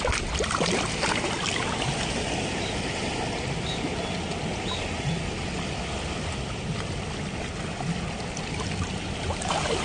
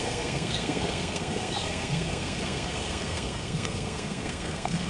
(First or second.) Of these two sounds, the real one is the first